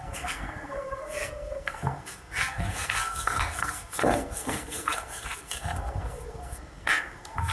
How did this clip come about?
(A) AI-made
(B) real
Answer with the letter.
A